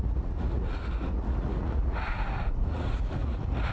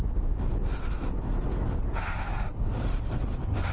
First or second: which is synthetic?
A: first